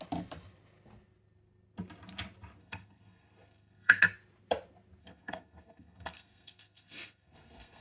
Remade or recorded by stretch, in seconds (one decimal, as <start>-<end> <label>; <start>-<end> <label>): 0.0-2.6 recorded; 2.6-4.0 remade; 4.0-5.0 recorded; 5.0-7.8 remade